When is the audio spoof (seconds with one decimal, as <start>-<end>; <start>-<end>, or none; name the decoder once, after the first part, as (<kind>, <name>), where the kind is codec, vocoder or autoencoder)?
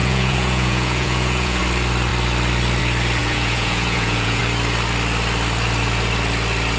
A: 0.0-1.6 (vocoder, Vocos); 3.2-4.4